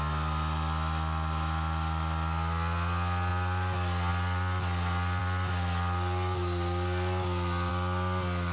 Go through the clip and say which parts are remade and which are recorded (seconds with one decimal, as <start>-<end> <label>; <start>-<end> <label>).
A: 0.0-8.5 recorded